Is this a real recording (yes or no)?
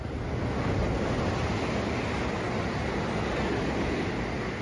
yes